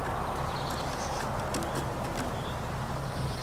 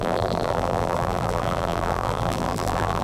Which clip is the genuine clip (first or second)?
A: first